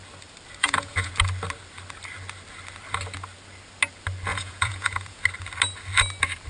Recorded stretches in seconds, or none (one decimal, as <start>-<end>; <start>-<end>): 0.0-0.6; 1.1-4.3; 5.2-6.5

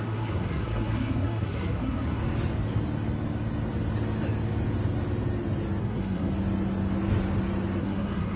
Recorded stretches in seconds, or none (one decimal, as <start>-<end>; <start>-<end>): 2.2-5.8; 6.3-7.8

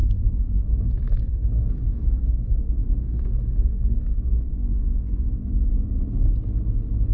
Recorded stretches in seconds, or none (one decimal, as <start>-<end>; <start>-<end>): 5.7-7.1

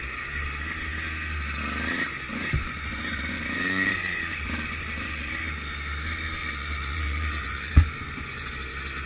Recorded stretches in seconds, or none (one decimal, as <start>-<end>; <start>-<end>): 0.0-2.3; 5.4-6.4; 8.5-9.1